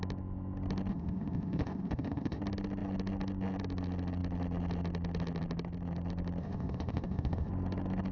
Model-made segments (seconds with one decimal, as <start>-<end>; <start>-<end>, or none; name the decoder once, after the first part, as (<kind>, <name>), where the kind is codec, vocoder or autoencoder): 0.9-2.4 (codec, ZipCodec); 6.4-7.5

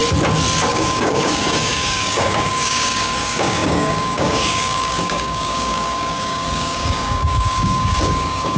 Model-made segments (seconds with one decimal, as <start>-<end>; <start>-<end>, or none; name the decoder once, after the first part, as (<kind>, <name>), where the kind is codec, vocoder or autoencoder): 0.7-8.6 (codec, DAC)

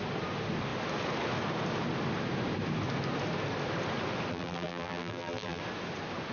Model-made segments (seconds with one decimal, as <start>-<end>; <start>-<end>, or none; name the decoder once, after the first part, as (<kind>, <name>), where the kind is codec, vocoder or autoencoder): 4.3-5.6 (vocoder, BigVGAN v2)

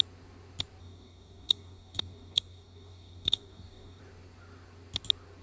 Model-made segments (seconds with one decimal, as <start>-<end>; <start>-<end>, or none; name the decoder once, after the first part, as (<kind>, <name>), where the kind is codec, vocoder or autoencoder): 0.8-4.0 (codec, DAC)

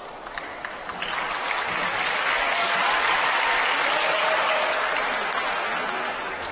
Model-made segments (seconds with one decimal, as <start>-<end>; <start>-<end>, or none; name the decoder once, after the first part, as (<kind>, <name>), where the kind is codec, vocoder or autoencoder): 1.8-3.2 (codec, DAC); 4.0-4.6

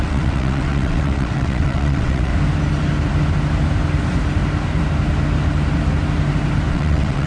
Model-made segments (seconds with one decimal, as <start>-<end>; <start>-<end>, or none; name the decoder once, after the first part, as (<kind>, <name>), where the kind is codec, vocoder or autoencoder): 0.0-2.3 (vocoder, WaveNeXt); 6.7-7.3

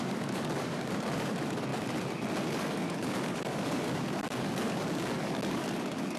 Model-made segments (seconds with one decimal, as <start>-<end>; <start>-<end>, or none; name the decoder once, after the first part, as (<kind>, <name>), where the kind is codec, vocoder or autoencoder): 0.0-1.7 (codec, DAC); 2.4-6.2

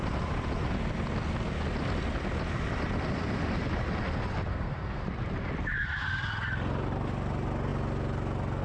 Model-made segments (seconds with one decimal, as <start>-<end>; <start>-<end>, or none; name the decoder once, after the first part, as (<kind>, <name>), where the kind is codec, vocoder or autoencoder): 4.5-5.0 (codec, SNAC)